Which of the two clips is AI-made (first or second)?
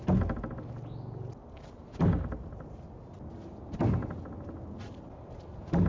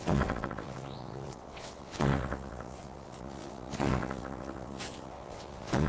second